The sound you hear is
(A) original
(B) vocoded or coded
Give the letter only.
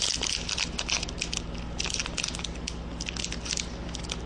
A